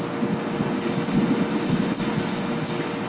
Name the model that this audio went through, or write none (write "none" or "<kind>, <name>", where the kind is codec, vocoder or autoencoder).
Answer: none